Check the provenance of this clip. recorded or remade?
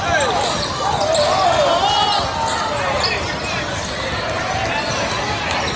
recorded